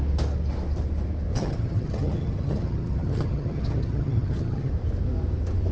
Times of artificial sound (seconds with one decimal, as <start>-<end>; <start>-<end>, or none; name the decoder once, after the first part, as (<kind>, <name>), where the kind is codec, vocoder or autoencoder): 1.3-4.7 (vocoder, HiFi-GAN)